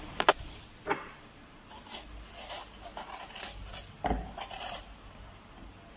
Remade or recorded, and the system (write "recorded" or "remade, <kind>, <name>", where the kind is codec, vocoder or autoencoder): recorded